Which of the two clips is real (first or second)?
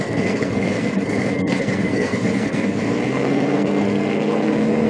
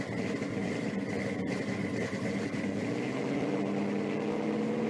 second